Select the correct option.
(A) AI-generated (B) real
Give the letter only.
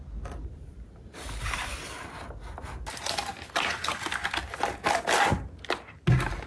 B